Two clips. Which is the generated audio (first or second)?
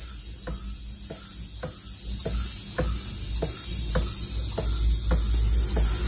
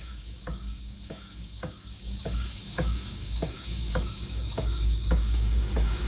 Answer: second